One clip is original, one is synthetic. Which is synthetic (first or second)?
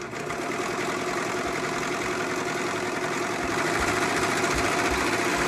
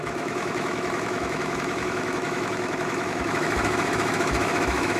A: second